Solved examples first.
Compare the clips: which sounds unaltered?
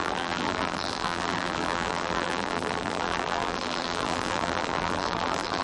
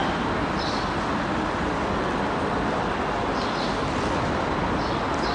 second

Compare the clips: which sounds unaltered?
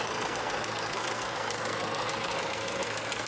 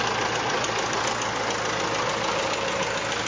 second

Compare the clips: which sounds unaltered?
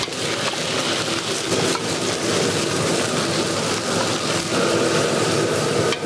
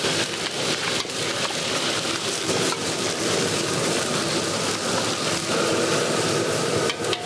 first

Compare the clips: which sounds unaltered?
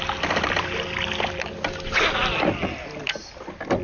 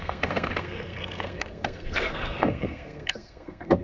first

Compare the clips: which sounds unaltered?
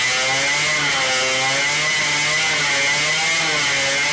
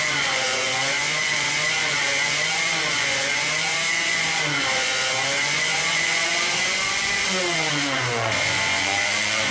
first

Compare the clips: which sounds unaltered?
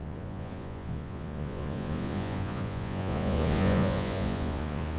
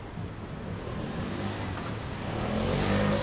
second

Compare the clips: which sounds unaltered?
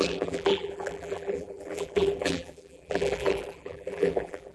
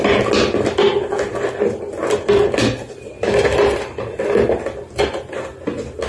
second